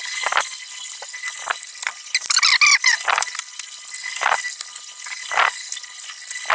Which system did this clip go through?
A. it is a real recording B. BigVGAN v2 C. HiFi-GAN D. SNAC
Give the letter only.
A